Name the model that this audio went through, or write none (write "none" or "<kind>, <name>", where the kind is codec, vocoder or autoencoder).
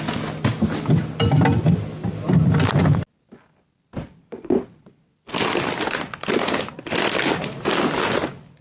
none